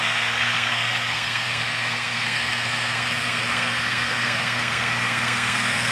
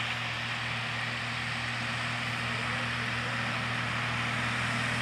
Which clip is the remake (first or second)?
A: first